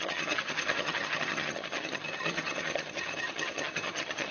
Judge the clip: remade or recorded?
remade